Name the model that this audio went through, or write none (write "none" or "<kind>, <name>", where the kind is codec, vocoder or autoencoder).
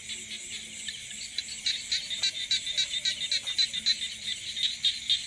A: none